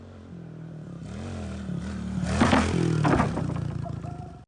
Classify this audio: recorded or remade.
recorded